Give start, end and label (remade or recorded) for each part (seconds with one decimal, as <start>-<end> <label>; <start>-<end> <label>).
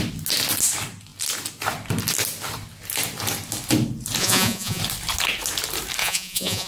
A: 0.0-4.2 recorded; 4.2-4.8 remade; 4.8-6.0 recorded; 6.0-6.7 remade